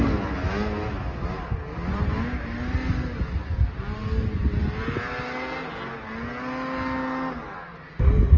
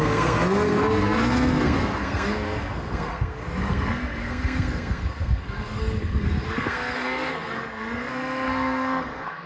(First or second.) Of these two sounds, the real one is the first